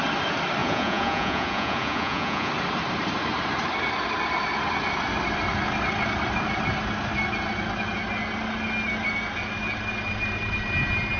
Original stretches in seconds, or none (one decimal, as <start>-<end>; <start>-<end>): 0.0-0.6; 2.5-11.2